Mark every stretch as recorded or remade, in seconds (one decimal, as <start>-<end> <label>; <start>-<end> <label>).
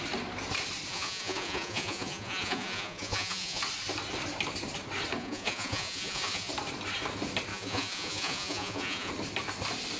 0.0-0.9 recorded; 0.9-3.6 remade; 3.6-5.2 recorded; 5.2-6.5 remade; 6.5-7.5 recorded; 7.5-9.1 remade; 9.1-10.0 recorded